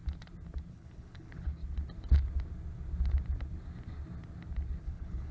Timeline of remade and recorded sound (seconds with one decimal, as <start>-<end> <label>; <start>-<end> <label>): 0.0-0.7 recorded; 0.7-1.6 remade; 1.6-4.8 recorded; 4.8-5.3 remade

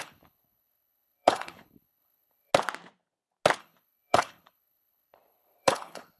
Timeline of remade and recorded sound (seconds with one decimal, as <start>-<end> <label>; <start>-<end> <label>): 0.0-2.5 remade; 2.5-3.6 recorded; 3.6-6.2 remade

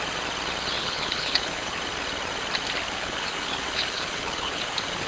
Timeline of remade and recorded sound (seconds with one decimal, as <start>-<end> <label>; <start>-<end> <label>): 0.0-0.8 recorded; 0.8-1.8 remade; 1.8-2.8 recorded; 2.8-5.1 remade

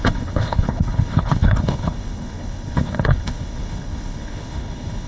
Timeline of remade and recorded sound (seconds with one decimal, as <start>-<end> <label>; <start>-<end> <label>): 0.0-5.1 remade

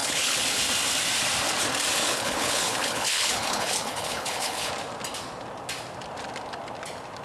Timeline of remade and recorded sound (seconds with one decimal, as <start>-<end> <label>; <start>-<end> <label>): 0.0-0.6 remade; 0.6-2.0 recorded; 2.0-4.7 remade; 4.7-7.2 recorded

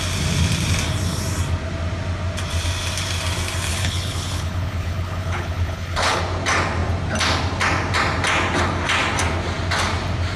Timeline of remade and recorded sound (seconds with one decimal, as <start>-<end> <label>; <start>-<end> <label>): 0.0-3.7 recorded; 3.7-6.2 remade; 6.2-10.4 recorded

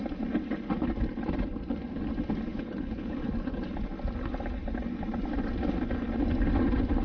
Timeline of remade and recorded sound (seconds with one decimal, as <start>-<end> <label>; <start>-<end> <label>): 0.0-2.5 recorded; 2.5-3.6 remade; 3.6-7.0 recorded

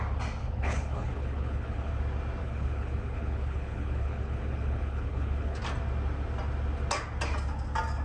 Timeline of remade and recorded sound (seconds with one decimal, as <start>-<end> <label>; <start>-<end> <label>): 0.0-0.4 recorded; 0.4-1.9 remade; 1.9-2.4 recorded; 2.4-5.6 remade; 5.6-8.0 recorded